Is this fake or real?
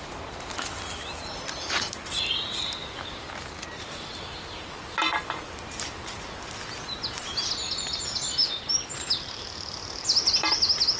real